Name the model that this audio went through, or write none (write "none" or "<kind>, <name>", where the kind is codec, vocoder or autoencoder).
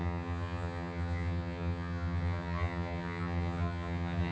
vocoder, HiFi-GAN